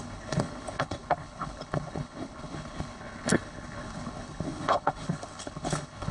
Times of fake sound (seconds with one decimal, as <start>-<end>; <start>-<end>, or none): 0.0-6.1